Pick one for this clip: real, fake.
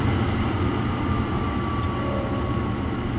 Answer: real